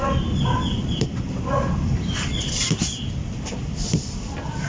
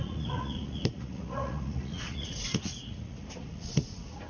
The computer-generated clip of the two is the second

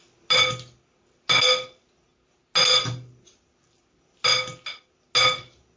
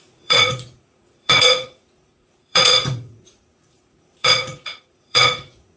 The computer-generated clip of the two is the second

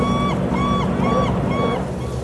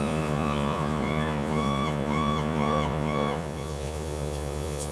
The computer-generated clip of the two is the second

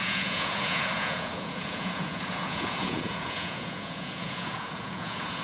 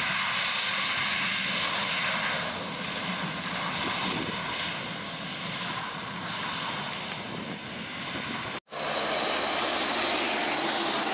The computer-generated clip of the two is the first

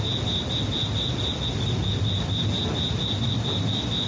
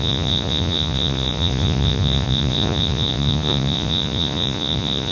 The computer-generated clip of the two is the second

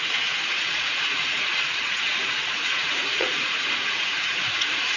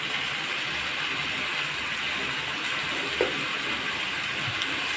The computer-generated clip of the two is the first